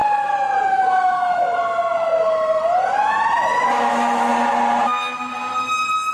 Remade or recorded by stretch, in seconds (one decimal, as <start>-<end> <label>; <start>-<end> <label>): 0.0-0.7 recorded; 0.7-1.4 remade; 1.4-3.9 recorded; 3.9-4.3 remade; 4.3-6.1 recorded